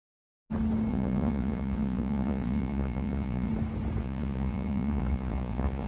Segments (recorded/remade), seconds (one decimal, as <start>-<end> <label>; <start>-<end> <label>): 0.0-0.9 recorded; 0.9-3.5 remade; 3.5-4.0 recorded; 4.0-5.9 remade